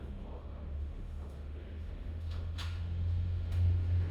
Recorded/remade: remade